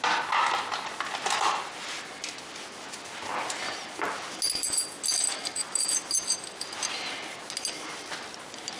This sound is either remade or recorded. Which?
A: recorded